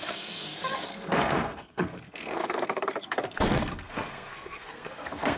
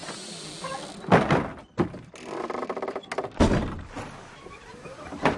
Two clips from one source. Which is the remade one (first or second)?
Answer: first